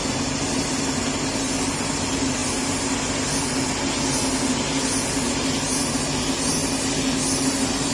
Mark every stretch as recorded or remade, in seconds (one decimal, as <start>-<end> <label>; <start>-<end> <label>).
0.0-0.8 recorded; 0.8-2.4 remade; 2.4-5.9 recorded; 5.9-6.6 remade; 6.6-7.2 recorded; 7.2-7.9 remade